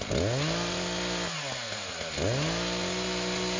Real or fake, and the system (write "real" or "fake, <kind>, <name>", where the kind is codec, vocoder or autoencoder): real